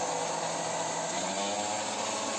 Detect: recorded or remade recorded